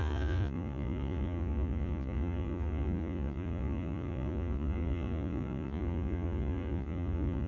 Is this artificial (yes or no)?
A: yes